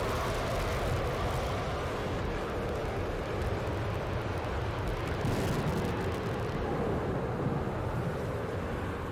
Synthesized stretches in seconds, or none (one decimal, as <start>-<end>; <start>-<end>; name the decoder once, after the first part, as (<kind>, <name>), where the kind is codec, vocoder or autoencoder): none